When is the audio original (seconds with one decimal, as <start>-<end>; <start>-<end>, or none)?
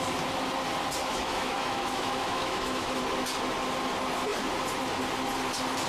0.0-1.0; 3.0-5.9